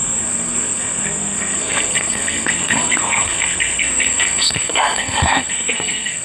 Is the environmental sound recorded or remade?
remade